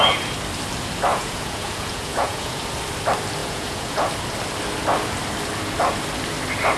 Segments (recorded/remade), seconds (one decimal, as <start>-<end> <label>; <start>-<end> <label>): 0.0-1.1 recorded; 1.1-2.6 remade; 2.6-3.4 recorded; 3.4-4.1 remade; 4.1-6.8 recorded